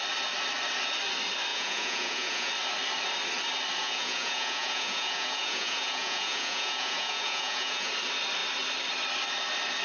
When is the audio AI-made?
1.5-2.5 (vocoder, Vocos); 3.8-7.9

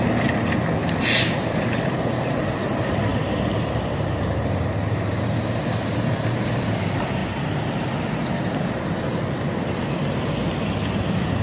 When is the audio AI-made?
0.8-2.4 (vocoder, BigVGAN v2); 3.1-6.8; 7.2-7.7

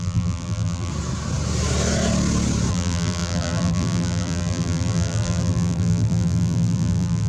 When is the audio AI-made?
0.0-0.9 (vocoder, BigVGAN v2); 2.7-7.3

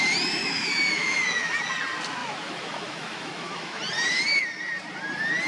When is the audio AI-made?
0.4-1.5 (autoencoder, DAC-VAE); 2.2-3.8